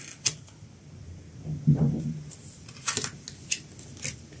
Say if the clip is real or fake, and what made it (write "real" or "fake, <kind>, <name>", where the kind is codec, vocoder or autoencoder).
real